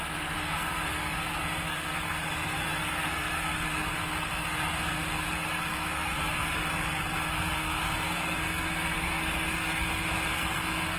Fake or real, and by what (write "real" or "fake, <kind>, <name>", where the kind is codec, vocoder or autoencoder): fake, codec, SNAC